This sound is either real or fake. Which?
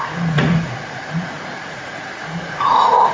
fake